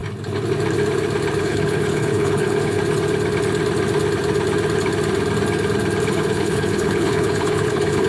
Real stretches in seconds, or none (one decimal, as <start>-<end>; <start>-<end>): 0.0-1.4; 2.8-6.1